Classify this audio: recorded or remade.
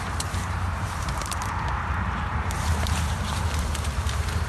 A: remade